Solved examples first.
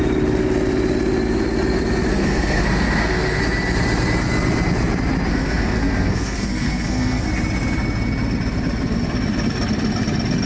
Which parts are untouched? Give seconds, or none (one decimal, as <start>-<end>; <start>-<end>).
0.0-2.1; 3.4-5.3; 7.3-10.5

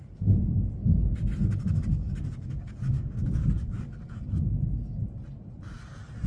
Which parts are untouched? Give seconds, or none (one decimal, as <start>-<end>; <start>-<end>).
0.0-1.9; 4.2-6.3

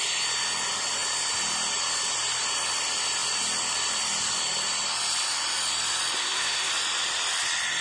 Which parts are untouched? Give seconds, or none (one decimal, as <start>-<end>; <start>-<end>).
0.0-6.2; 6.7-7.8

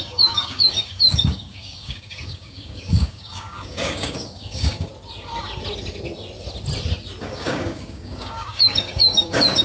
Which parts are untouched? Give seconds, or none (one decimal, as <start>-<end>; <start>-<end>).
4.9-7.2

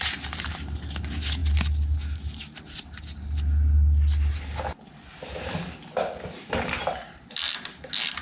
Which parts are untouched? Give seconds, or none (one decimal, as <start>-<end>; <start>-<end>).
0.0-8.2